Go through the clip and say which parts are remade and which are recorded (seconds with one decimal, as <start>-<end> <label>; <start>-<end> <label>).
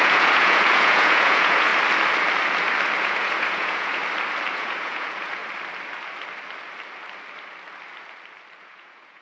0.0-1.7 remade; 1.7-3.0 recorded; 3.0-4.0 remade; 4.0-4.5 recorded; 4.5-5.4 remade; 5.4-8.6 recorded; 8.6-9.2 remade